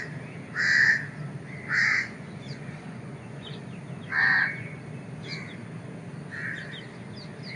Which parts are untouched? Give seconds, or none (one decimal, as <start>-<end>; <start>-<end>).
0.0-1.8; 3.6-4.2; 4.8-7.6